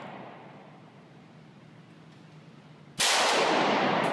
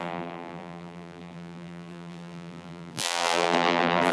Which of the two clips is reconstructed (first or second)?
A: second